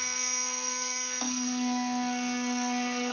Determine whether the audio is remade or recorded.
remade